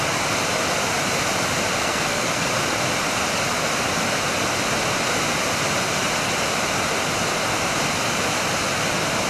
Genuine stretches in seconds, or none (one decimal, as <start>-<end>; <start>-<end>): 0.0-1.8; 2.5-9.3